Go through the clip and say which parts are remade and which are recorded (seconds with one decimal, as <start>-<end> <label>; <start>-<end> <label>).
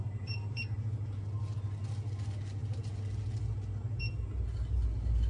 0.0-0.6 remade; 0.6-5.3 recorded